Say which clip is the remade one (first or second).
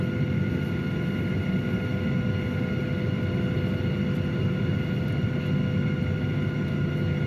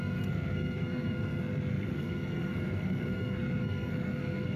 second